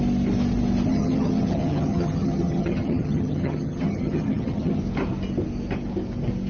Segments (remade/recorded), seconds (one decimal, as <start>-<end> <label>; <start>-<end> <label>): 0.0-0.9 recorded; 0.9-4.8 remade; 4.8-6.5 recorded